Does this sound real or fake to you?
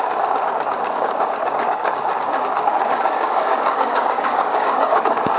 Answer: fake